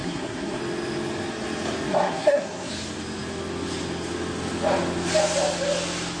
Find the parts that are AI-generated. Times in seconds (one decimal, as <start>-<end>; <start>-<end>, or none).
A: 0.0-0.6; 1.9-2.7